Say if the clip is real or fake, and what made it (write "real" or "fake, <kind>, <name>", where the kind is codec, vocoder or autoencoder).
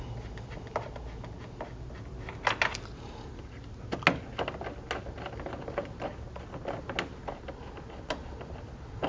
real